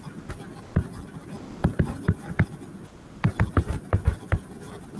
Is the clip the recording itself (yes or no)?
yes